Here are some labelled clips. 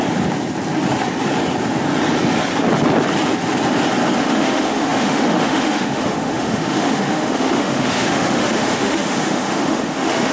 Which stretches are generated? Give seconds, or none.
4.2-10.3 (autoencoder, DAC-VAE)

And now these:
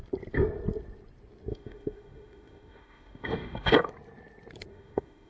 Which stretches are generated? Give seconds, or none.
1.5-3.9 (autoencoder, DAC-VAE); 4.7-5.3

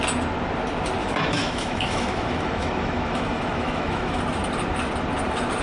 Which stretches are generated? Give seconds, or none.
1.0-4.2 (autoencoder, DAC-VAE)

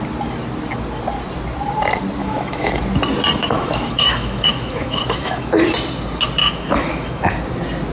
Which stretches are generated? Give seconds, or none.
2.2-2.8 (autoencoder, DAC-VAE); 3.4-5.5; 6.4-7.3